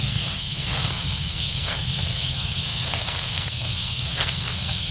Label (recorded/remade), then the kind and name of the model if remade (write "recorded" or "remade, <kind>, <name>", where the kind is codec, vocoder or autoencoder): remade, codec, SNAC